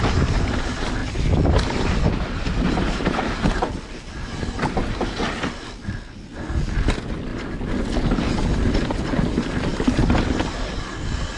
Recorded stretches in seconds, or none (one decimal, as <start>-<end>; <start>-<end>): 0.0-1.0; 2.5-11.4